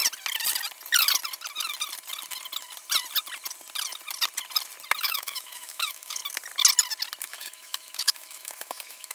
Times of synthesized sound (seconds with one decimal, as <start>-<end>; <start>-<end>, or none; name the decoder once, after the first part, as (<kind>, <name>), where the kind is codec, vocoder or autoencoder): 5.0-6.2 (autoencoder, DAC-VAE); 7.2-9.1